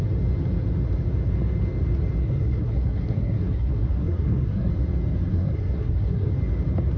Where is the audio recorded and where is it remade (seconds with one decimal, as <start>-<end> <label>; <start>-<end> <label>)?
0.0-2.2 recorded; 2.2-4.7 remade; 4.7-5.3 recorded; 5.3-6.3 remade; 6.3-7.0 recorded

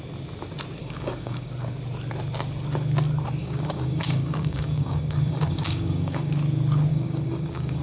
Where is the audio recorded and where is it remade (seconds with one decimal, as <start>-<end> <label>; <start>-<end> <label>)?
0.0-0.8 recorded; 0.8-1.5 remade; 1.5-3.4 recorded; 3.4-6.3 remade; 6.3-6.9 recorded; 6.9-7.8 remade